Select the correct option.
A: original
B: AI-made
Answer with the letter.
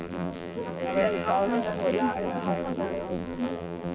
B